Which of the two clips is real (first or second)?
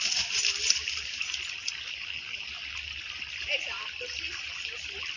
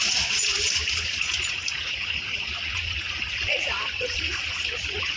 first